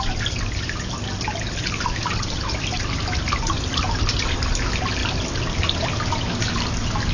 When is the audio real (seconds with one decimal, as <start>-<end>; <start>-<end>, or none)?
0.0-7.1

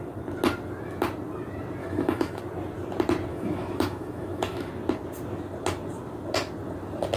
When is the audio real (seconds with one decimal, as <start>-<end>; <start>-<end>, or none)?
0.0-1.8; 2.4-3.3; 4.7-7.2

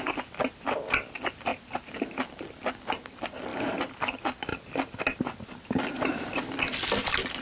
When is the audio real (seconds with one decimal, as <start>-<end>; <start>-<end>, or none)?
0.0-1.5; 2.5-3.5; 4.0-7.4